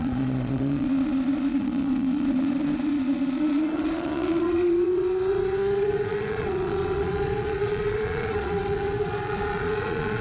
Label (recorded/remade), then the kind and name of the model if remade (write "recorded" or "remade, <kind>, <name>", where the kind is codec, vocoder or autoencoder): remade, vocoder, Vocos